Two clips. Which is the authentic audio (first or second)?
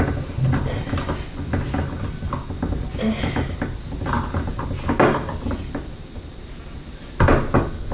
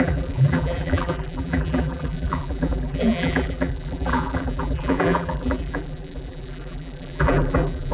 first